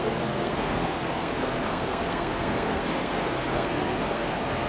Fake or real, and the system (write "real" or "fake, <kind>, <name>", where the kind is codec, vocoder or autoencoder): fake, codec, SNAC